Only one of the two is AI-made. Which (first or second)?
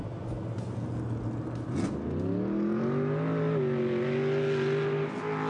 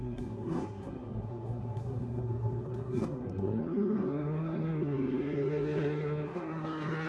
second